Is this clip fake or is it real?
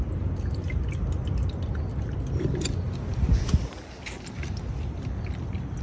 real